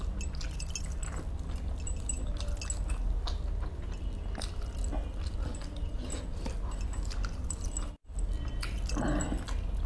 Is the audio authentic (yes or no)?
yes